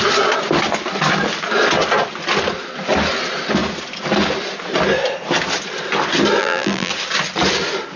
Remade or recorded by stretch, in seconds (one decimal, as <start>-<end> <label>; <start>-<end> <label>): 0.0-6.4 recorded; 6.4-6.9 remade; 6.9-8.0 recorded